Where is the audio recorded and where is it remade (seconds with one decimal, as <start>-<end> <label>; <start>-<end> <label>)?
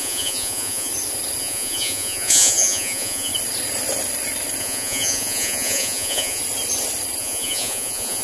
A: 0.0-0.9 remade; 0.9-1.4 recorded; 1.4-3.3 remade; 3.3-4.6 recorded; 4.6-6.4 remade; 6.4-7.2 recorded; 7.2-8.2 remade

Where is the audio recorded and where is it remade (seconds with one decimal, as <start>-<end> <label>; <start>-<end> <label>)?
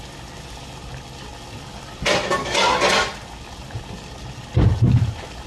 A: 0.0-5.5 recorded